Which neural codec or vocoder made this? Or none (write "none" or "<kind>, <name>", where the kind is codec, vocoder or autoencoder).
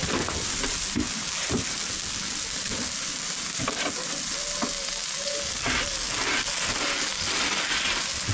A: none